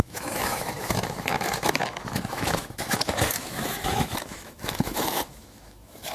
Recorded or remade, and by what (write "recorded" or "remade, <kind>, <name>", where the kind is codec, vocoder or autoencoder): remade, autoencoder, DAC-VAE